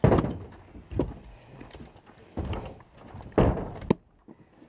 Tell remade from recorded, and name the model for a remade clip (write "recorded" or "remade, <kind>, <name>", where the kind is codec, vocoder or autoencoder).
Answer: recorded